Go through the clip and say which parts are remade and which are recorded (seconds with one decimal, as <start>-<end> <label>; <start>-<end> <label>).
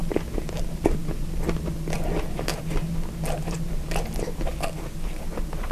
0.0-5.7 recorded